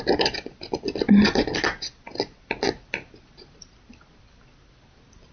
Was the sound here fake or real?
real